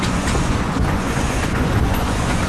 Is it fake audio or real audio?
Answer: fake